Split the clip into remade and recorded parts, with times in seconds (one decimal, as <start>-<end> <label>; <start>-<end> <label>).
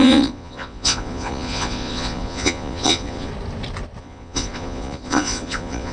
0.0-3.3 remade; 3.3-4.0 recorded; 4.0-5.9 remade